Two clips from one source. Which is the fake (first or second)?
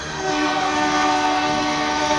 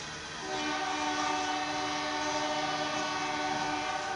first